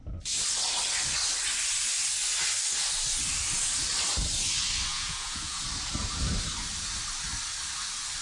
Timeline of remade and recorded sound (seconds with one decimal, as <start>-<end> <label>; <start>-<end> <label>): 0.0-4.9 recorded; 4.9-5.6 remade; 5.6-8.2 recorded